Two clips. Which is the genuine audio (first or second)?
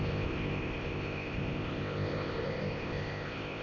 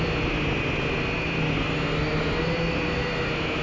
second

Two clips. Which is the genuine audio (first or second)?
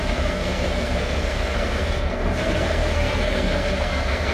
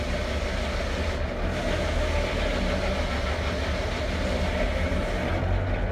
second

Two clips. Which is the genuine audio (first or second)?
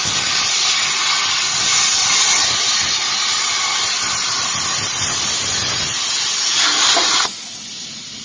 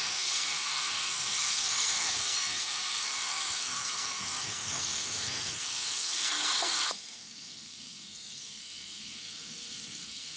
first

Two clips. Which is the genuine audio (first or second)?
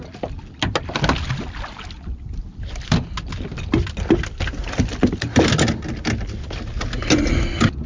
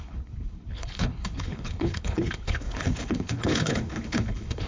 first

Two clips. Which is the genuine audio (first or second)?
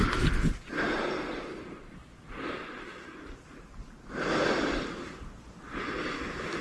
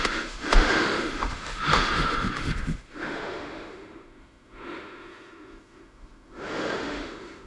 first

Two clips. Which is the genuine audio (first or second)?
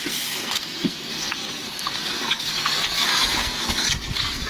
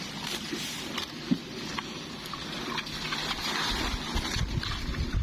second